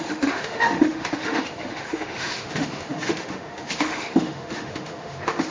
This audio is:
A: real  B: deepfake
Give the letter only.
B